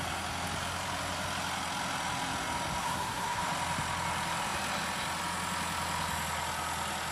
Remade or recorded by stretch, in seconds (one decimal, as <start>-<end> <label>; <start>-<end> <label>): 0.0-2.8 recorded; 2.8-3.4 remade; 3.4-7.1 recorded